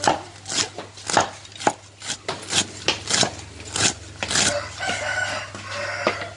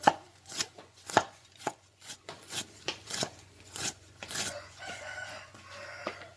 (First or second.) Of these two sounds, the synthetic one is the second